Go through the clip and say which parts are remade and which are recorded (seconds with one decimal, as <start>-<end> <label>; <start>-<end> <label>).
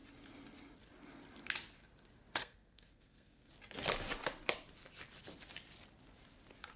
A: 0.0-2.4 recorded; 2.4-3.5 remade; 3.5-6.8 recorded